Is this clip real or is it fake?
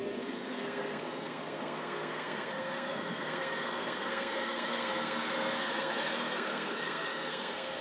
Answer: fake